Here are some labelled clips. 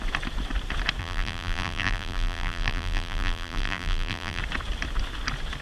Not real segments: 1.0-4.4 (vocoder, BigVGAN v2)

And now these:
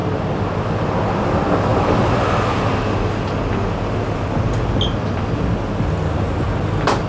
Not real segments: none

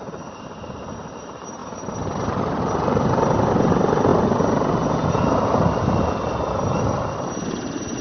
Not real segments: 1.6-2.6 (vocoder, BigVGAN v2)